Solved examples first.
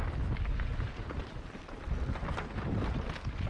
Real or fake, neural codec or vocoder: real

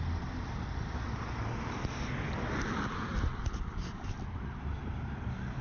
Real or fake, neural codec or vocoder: real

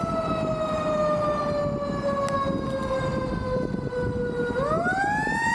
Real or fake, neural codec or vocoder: real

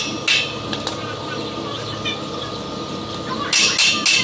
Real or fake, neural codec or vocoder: real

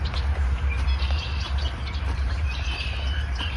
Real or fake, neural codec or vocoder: fake, vocoder, BigVGAN v2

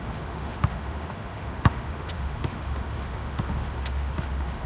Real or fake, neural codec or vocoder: fake, autoencoder, DAC-VAE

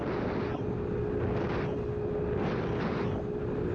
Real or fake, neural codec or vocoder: real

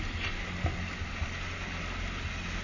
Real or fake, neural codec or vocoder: real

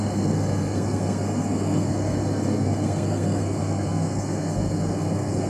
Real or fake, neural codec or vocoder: fake, codec, SNAC